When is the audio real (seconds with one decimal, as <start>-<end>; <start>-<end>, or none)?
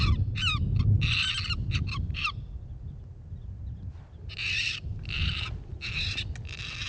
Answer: 0.0-6.9